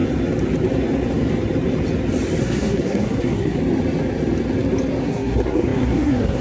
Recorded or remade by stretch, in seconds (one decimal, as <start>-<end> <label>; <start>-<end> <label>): 0.0-2.4 recorded; 2.4-3.6 remade; 3.6-5.0 recorded; 5.0-6.4 remade